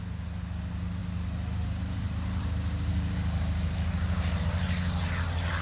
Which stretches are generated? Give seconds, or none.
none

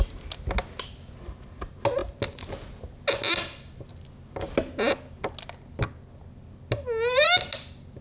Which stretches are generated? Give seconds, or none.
none

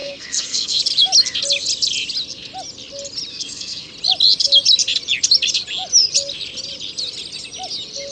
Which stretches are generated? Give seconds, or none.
0.0-0.8 (codec, SNAC); 3.3-3.9

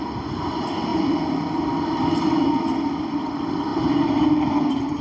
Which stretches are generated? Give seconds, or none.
none